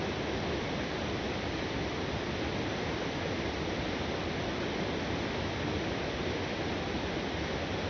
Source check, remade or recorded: recorded